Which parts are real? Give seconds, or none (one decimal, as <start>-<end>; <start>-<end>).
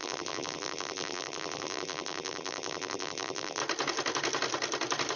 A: 3.6-5.2